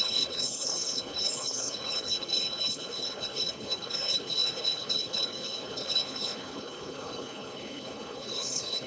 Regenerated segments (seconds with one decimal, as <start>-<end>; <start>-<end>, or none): 0.0-8.9